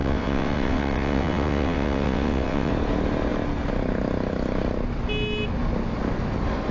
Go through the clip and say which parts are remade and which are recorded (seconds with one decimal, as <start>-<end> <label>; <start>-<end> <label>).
0.0-2.7 remade; 2.7-6.7 recorded